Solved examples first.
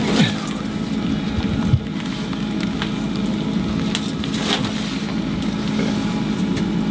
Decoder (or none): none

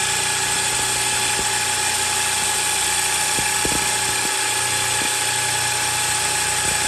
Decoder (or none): none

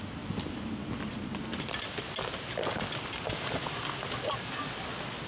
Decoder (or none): none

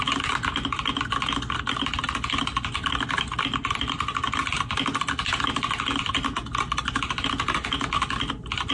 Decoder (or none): none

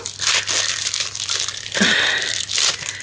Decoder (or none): none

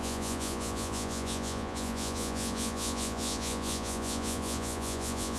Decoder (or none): vocoder, Vocos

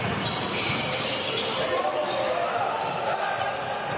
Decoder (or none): none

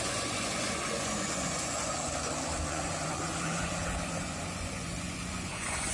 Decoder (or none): vocoder, Vocos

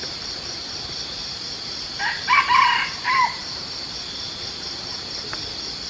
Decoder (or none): none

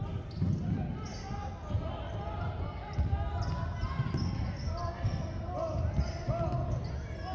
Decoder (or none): none